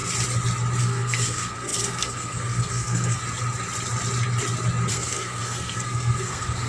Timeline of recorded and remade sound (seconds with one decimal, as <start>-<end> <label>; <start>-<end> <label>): 0.0-0.8 recorded; 0.8-3.2 remade; 3.2-4.9 recorded; 4.9-6.7 remade